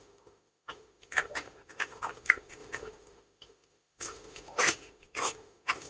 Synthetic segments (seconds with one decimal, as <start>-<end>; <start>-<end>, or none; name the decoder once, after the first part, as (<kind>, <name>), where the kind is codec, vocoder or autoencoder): 0.0-5.9 (autoencoder, DAC-VAE)